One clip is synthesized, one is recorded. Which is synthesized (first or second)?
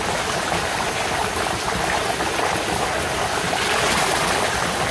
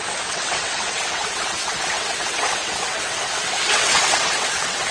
second